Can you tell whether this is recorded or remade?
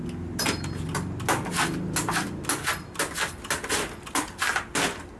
recorded